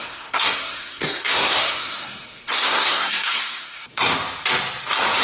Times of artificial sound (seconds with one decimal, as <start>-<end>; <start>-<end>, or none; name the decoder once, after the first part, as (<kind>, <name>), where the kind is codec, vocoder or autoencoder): 0.0-4.1 (codec, SNAC)